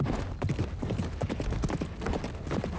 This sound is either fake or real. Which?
real